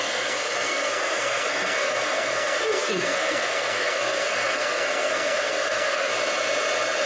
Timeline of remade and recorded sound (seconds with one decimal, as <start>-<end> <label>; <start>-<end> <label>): 0.0-6.1 remade; 6.1-7.1 recorded